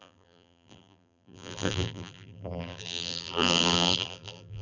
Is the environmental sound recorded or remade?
remade